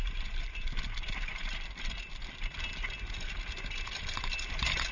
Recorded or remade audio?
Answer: remade